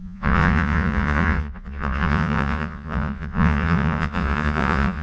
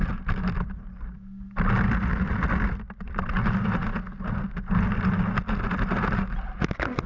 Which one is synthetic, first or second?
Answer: first